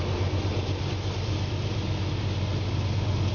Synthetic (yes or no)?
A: no